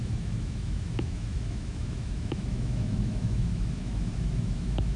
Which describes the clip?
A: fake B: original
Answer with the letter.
A